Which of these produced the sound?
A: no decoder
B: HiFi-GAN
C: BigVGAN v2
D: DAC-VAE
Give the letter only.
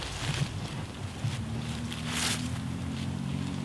A